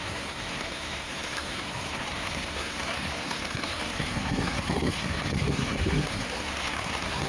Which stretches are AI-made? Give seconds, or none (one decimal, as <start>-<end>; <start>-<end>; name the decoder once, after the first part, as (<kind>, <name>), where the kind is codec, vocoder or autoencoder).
0.0-7.3 (codec, SNAC)